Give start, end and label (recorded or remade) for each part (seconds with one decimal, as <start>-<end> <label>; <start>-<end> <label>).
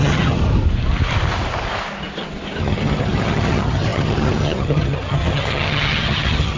0.0-0.4 remade; 0.4-2.6 recorded; 2.6-6.6 remade